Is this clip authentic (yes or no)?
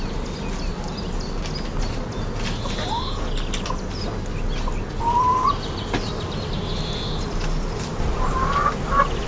yes